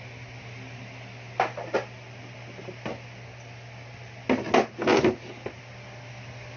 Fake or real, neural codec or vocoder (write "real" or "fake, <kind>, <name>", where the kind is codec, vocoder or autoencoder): real